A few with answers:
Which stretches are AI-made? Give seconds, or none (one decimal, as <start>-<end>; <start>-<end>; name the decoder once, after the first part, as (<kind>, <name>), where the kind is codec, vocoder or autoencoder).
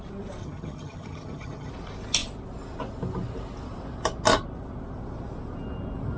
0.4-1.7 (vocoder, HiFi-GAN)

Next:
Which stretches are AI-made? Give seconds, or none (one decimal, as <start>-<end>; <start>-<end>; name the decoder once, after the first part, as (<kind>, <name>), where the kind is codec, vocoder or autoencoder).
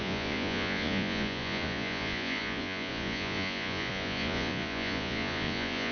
0.0-5.9 (vocoder, Vocos)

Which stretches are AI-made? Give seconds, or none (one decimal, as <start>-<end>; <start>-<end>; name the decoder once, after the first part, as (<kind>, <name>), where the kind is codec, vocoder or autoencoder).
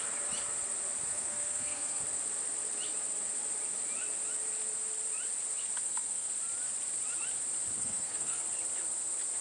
1.1-2.0 (codec, SNAC); 5.8-6.3; 7.8-8.4